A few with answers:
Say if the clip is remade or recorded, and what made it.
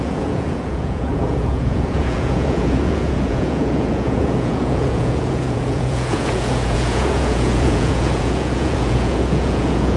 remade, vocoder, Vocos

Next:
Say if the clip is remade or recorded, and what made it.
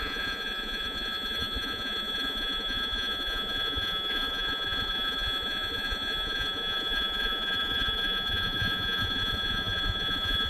remade, vocoder, Vocos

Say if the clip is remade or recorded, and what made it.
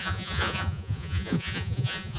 remade, vocoder, Vocos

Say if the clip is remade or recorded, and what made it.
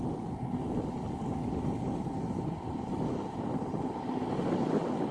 recorded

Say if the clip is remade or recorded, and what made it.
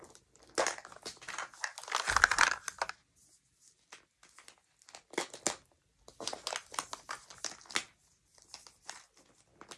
recorded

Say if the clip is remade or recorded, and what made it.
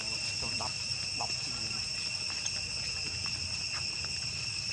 recorded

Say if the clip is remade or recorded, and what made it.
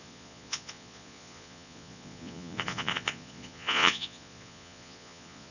remade, vocoder, Vocos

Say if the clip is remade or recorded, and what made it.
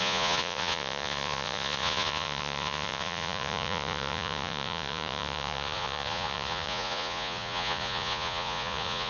remade, vocoder, Vocos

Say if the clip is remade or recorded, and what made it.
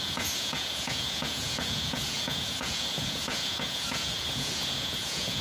remade, vocoder, Vocos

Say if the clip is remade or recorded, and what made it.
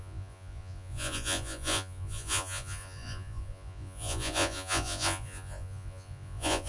remade, vocoder, Vocos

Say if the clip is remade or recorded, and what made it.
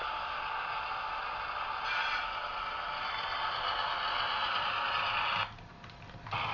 recorded